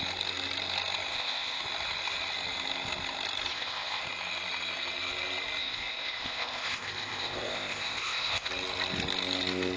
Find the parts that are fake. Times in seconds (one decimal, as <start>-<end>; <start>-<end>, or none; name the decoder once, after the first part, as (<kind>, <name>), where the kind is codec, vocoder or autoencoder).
1.1-1.6 (codec, ZipCodec); 3.5-4.0; 5.6-8.5